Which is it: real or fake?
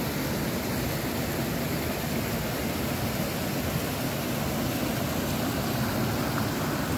real